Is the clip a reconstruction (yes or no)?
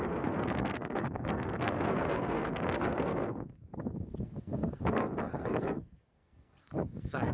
yes